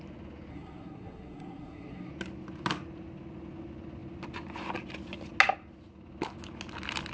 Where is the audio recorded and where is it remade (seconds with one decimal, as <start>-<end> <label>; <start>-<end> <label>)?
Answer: 0.0-0.5 recorded; 0.5-2.1 remade; 2.1-7.1 recorded